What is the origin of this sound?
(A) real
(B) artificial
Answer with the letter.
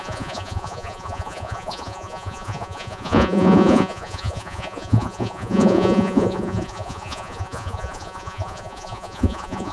B